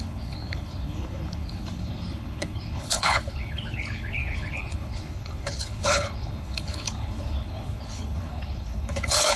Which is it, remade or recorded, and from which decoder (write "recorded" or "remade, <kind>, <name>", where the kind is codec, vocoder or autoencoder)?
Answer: remade, codec, HILCodec